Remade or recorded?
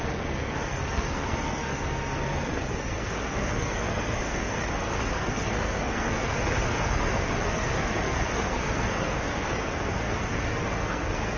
remade